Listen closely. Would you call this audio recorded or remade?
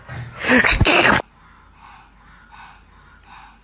recorded